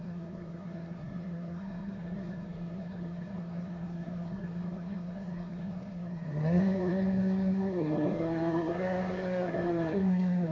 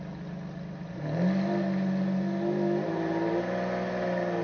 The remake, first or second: first